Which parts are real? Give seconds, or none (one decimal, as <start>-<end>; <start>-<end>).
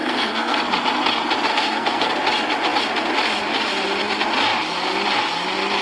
0.6-1.5; 2.1-5.8